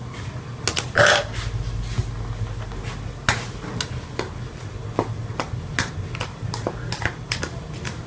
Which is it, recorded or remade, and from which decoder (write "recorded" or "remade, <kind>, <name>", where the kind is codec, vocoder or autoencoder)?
recorded